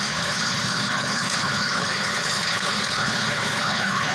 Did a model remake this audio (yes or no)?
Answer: yes